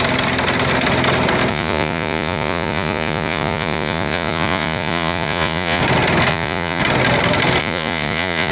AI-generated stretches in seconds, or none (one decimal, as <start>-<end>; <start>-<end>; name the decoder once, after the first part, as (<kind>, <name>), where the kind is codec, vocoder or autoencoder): 1.5-5.8 (vocoder, Vocos); 6.3-6.8; 7.6-8.5